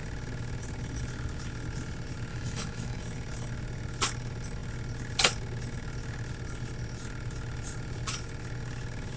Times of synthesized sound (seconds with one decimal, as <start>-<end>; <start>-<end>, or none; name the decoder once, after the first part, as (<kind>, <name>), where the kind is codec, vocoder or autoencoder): 2.3-3.0 (autoencoder, DAC-VAE)